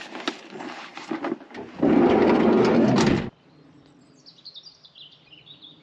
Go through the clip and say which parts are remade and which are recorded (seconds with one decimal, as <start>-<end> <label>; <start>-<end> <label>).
0.0-5.8 recorded